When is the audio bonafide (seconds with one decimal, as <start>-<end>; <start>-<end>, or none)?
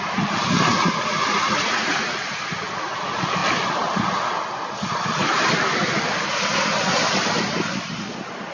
0.0-0.7; 2.0-8.5